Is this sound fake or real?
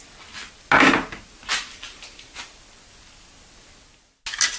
real